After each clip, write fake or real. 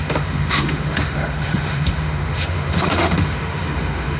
fake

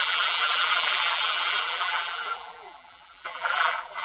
fake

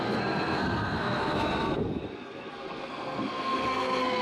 fake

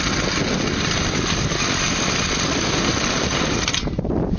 real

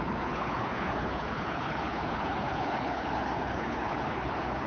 fake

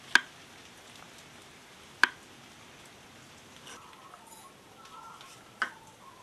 real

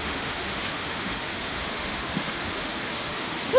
fake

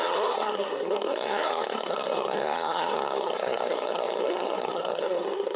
fake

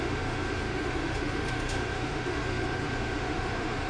fake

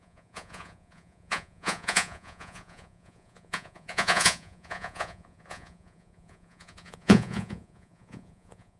fake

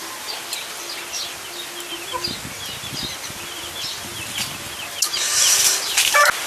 real